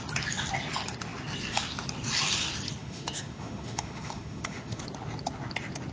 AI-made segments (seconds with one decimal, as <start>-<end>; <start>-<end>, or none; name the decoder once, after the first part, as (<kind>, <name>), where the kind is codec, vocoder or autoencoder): 2.8-4.8 (autoencoder, DAC-VAE)